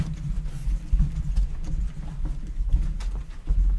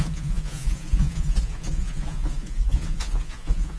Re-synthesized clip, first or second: second